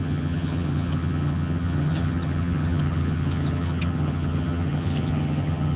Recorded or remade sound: remade